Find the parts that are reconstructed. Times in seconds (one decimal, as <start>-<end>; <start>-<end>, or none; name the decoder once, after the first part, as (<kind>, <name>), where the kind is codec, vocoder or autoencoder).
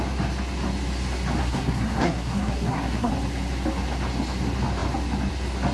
1.4-3.1 (codec, SNAC)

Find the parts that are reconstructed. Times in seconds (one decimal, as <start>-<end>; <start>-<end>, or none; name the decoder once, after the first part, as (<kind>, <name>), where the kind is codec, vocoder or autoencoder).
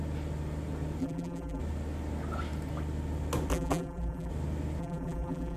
1.0-1.6 (vocoder, BigVGAN v2); 3.5-4.3; 4.8-5.6